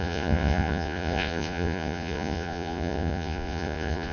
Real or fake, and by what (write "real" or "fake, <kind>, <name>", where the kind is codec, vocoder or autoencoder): fake, vocoder, Vocos